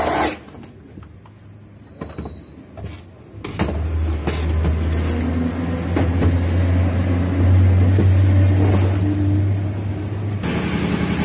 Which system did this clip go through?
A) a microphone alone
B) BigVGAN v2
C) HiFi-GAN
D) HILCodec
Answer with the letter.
A